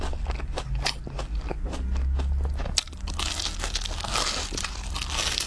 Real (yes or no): yes